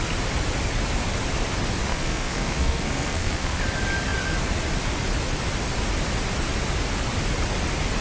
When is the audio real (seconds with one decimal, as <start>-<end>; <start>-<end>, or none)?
0.0-1.9; 3.6-8.0